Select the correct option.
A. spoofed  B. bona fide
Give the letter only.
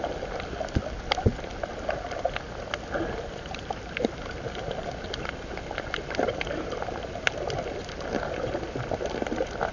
B